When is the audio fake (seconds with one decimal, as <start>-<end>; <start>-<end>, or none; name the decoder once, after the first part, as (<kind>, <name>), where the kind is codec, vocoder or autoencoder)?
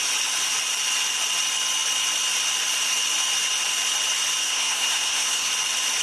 4.4-5.5 (codec, SNAC)